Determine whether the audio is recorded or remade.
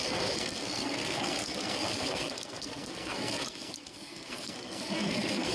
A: remade